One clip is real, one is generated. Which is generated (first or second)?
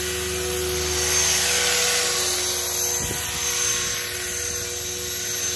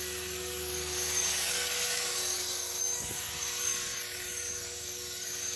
second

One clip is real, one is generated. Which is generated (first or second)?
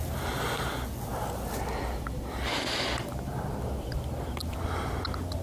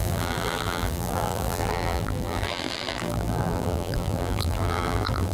second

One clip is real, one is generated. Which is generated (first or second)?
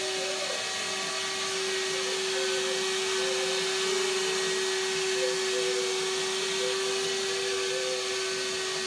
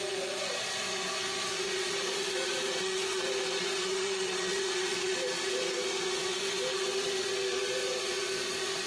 second